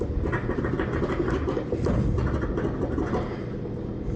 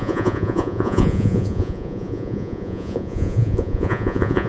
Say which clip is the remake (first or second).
second